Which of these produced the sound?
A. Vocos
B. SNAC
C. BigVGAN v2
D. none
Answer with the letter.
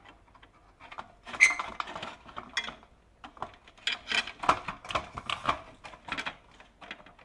D